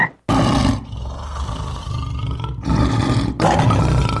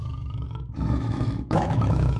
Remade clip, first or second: second